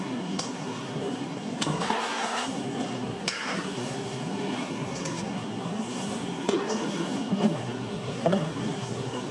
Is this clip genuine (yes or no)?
no